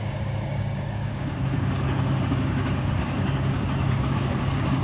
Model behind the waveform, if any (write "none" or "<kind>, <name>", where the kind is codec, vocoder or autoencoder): codec, DAC